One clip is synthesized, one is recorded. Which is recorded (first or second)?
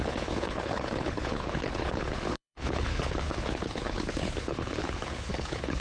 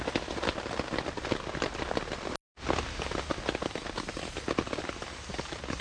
second